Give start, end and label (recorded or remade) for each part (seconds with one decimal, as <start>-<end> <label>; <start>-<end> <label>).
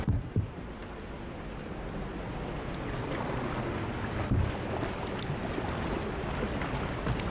0.0-7.3 recorded